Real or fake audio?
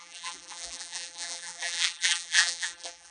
fake